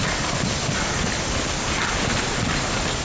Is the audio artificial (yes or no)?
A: no